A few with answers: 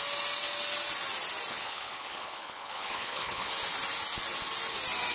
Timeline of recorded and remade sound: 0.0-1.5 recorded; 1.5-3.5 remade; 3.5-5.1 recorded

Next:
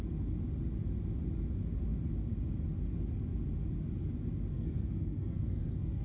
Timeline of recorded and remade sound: 0.0-4.5 recorded; 4.5-6.0 remade

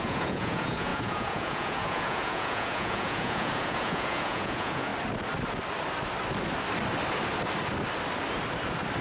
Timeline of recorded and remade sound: 0.0-4.9 remade; 4.9-9.0 recorded

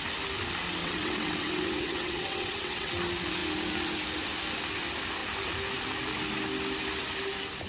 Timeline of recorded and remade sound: 0.0-0.8 recorded; 0.8-2.9 remade; 2.9-7.7 recorded

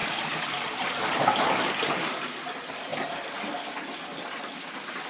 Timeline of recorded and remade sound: 0.0-5.1 recorded

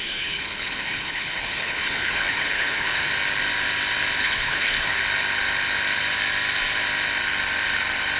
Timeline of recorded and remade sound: 0.0-3.1 remade; 3.1-4.2 recorded; 4.2-5.0 remade; 5.0-8.2 recorded

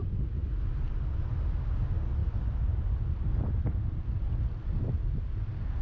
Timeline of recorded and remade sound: 0.0-5.8 recorded